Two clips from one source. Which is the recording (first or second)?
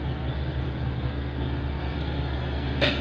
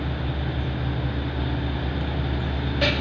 second